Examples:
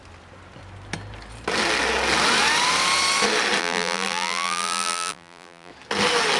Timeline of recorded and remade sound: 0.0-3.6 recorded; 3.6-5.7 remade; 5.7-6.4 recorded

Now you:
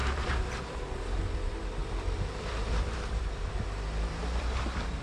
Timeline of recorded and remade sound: 0.0-0.8 remade; 0.8-1.8 recorded; 1.8-5.0 remade

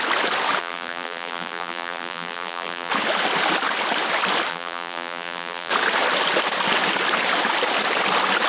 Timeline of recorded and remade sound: 0.0-0.6 recorded; 0.6-2.9 remade; 2.9-4.5 recorded; 4.5-5.7 remade; 5.7-8.5 recorded

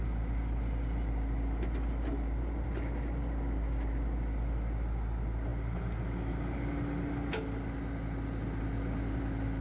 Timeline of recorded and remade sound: 0.0-9.6 recorded